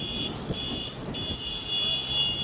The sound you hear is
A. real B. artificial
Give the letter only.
A